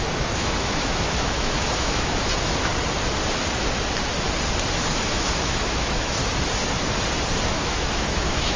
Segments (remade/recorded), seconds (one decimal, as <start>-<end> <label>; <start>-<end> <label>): 0.0-2.7 remade; 2.7-5.0 recorded; 5.0-6.2 remade; 6.2-7.5 recorded; 7.5-8.6 remade